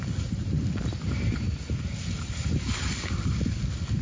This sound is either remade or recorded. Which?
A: recorded